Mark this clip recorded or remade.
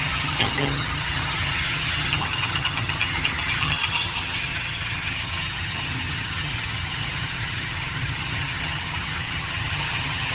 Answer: remade